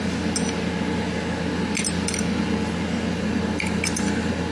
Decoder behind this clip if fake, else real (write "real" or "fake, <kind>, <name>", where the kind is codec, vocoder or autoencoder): real